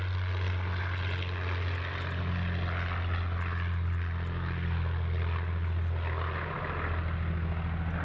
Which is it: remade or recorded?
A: recorded